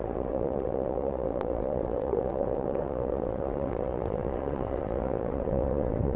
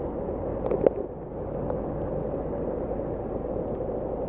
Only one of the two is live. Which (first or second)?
second